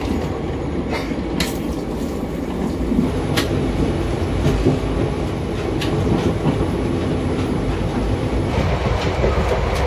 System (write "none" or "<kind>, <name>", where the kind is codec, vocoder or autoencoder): none